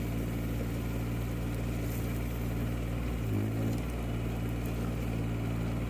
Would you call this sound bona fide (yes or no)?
yes